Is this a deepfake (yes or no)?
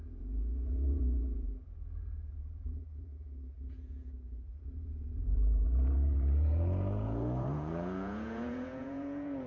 yes